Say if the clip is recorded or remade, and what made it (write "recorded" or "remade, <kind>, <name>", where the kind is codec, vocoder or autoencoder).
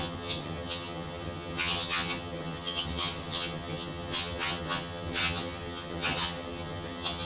remade, vocoder, HiFi-GAN